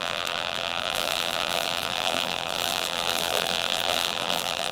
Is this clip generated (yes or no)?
yes